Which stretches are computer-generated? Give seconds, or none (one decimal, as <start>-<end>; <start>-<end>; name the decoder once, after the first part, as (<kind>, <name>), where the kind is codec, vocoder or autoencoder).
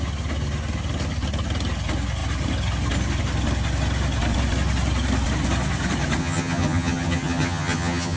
6.2-8.2 (vocoder, HiFi-GAN)